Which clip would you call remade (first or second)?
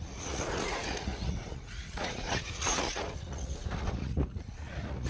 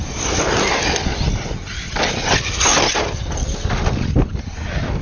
first